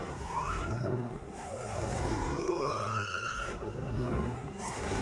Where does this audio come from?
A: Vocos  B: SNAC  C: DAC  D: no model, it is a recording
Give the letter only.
B